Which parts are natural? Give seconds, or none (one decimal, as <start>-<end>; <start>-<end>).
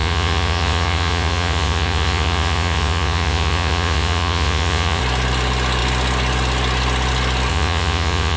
5.0-7.5